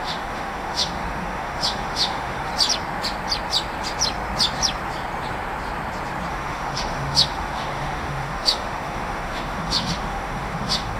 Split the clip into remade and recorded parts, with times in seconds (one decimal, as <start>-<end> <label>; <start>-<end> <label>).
0.0-2.5 remade; 2.5-6.3 recorded; 6.3-11.0 remade